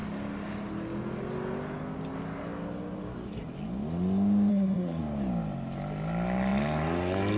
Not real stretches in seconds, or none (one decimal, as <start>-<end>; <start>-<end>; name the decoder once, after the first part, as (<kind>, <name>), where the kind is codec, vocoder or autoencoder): 4.5-5.0 (codec, SNAC)